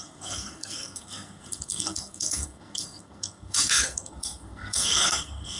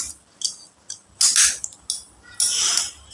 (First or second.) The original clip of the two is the second